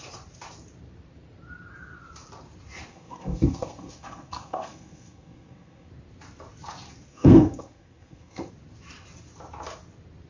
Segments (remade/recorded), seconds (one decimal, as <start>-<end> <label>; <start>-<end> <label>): 0.0-2.9 recorded; 2.9-5.9 remade; 5.9-7.1 recorded; 7.1-8.5 remade; 8.5-10.3 recorded